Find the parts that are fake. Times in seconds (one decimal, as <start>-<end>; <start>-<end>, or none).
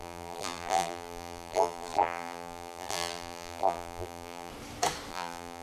0.0-4.5; 5.1-5.6